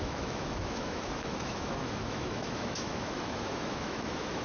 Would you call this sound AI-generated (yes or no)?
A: yes